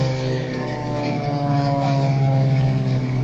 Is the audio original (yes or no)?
no